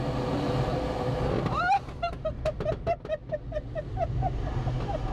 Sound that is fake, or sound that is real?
real